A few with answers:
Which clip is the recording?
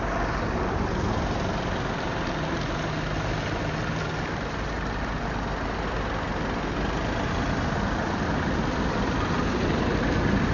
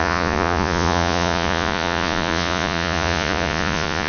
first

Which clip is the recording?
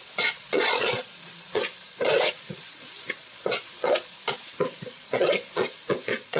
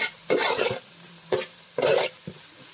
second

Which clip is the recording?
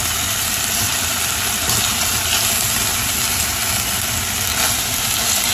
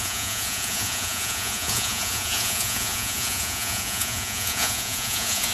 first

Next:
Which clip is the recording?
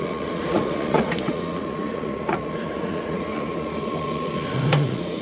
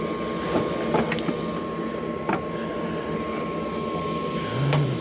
second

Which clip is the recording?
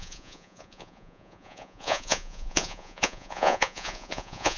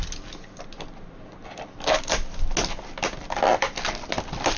second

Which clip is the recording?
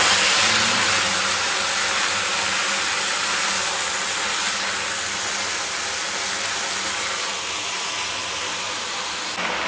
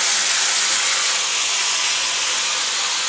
first